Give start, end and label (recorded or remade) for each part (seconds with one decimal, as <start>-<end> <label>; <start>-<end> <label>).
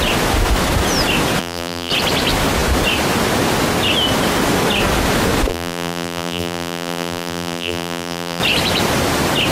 0.0-1.4 recorded; 1.4-1.9 remade; 1.9-5.5 recorded; 5.5-8.4 remade; 8.4-9.5 recorded